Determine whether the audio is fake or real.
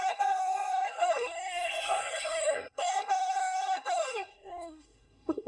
fake